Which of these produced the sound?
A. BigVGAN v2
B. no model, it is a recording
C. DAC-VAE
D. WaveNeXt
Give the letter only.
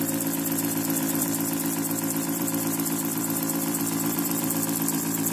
A